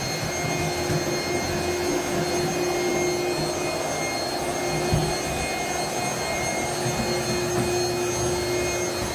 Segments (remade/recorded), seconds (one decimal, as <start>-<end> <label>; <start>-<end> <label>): 0.0-9.1 recorded